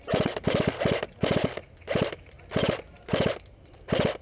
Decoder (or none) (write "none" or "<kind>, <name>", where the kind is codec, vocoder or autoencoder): none